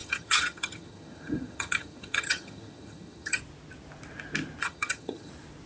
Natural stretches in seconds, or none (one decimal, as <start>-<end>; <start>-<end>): 3.4-4.6; 5.3-5.7